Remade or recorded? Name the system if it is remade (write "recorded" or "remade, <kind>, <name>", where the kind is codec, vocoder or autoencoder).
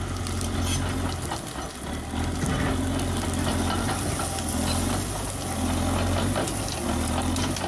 recorded